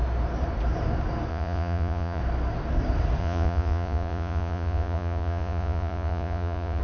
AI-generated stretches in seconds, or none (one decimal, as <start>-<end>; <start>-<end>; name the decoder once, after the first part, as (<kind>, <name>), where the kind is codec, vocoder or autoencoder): 1.3-2.2 (vocoder, Vocos); 3.2-6.8